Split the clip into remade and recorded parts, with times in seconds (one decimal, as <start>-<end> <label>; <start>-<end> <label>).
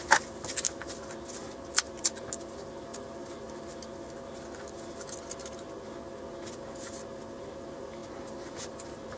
0.0-9.2 recorded